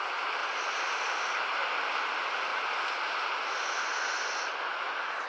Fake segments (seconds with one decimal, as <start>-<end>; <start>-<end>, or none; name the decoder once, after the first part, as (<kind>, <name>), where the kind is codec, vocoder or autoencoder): 0.4-1.3 (vocoder, BigVGAN v2)